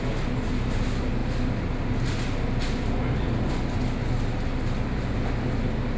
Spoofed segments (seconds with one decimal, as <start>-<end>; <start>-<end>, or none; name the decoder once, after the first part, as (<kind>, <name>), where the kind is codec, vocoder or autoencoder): none